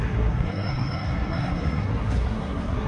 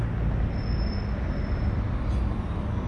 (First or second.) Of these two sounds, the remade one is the first